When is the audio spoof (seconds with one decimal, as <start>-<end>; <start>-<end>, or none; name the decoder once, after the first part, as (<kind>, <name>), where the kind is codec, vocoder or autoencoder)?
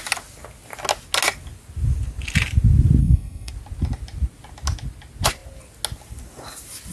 3.0-3.5 (codec, SNAC)